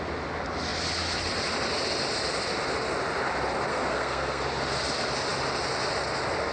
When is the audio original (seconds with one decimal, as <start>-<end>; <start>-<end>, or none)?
0.0-3.7; 4.4-6.5